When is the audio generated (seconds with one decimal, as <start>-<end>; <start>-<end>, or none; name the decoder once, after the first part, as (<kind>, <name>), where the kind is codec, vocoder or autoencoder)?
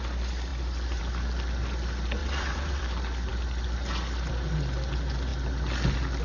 2.2-2.8 (vocoder, WaveNeXt)